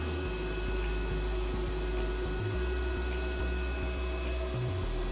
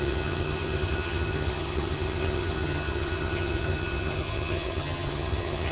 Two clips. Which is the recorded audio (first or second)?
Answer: first